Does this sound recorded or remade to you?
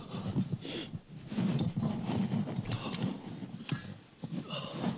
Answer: recorded